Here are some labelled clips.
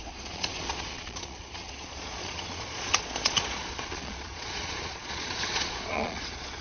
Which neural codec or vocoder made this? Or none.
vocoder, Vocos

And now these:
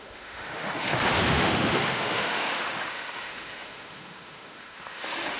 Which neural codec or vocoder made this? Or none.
autoencoder, DAC-VAE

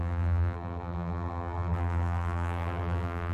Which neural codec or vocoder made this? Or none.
vocoder, BigVGAN v2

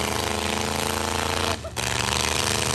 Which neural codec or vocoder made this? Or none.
none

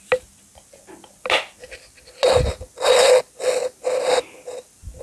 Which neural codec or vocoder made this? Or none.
none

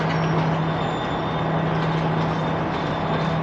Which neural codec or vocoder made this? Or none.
none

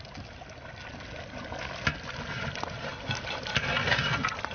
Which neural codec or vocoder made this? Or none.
none